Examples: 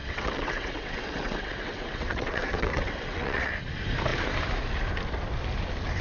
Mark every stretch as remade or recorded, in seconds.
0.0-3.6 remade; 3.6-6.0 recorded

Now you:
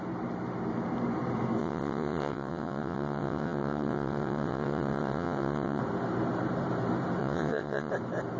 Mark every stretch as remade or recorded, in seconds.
0.0-1.6 recorded; 1.6-5.8 remade; 5.8-7.2 recorded; 7.2-7.9 remade; 7.9-8.4 recorded

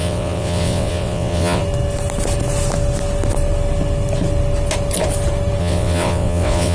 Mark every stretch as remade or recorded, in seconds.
0.0-1.6 remade; 1.6-5.6 recorded; 5.6-6.7 remade

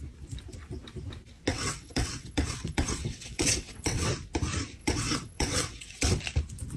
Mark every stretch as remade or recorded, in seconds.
0.0-1.5 recorded; 1.5-4.1 remade; 4.1-4.8 recorded; 4.8-6.2 remade; 6.2-6.8 recorded